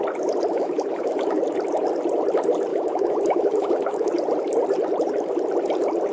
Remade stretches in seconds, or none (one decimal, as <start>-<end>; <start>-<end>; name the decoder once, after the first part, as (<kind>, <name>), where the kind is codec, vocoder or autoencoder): 0.5-1.4 (autoencoder, DAC-VAE); 2.7-4.1